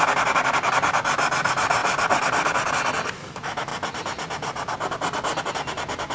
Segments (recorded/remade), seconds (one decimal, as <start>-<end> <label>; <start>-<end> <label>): 0.0-6.1 recorded